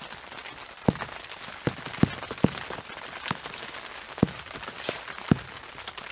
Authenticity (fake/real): real